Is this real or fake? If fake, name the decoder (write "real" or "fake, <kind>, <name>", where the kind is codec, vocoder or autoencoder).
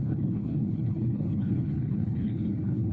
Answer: fake, codec, HILCodec